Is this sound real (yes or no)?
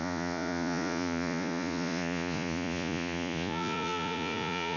no